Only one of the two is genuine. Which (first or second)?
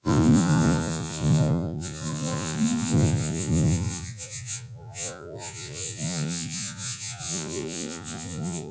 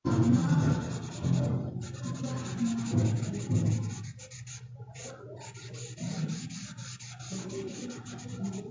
second